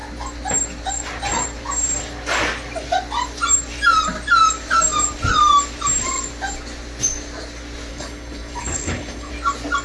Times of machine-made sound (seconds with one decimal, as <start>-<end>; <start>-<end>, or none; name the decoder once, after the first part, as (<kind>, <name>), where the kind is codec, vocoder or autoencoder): 7.9-9.3 (codec, HILCodec)